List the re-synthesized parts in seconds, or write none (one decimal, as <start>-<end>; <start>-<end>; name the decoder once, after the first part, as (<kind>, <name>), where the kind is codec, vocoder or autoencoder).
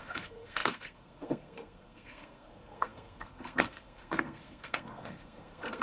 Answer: 0.0-5.8 (codec, SNAC)